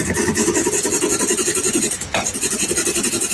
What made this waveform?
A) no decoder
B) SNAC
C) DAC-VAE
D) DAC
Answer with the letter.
A